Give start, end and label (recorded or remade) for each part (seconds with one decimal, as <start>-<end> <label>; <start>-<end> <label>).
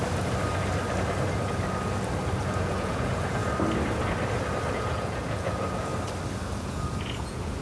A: 0.0-2.4 recorded; 2.4-3.4 remade; 3.4-4.7 recorded; 4.7-5.9 remade; 5.9-6.6 recorded; 6.6-7.6 remade